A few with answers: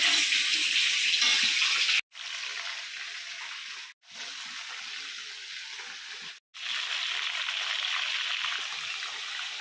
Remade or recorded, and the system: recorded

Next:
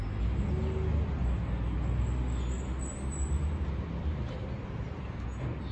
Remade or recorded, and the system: recorded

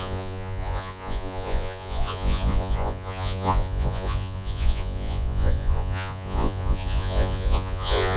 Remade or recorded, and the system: remade, vocoder, Vocos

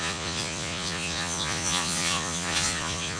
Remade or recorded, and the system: remade, vocoder, Vocos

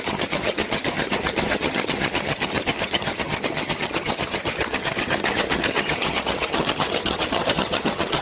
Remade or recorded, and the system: remade, vocoder, HiFi-GAN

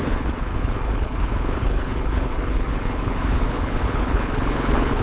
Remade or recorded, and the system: remade, codec, HILCodec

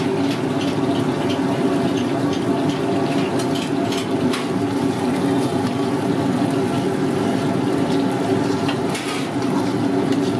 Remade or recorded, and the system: recorded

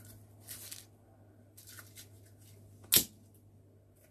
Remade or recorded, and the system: recorded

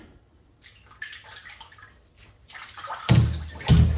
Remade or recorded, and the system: recorded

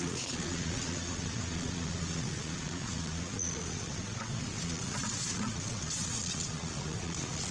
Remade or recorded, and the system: remade, vocoder, Vocos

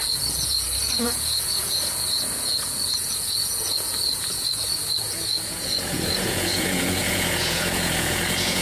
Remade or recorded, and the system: remade, vocoder, Vocos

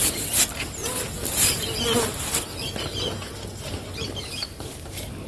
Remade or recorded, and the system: recorded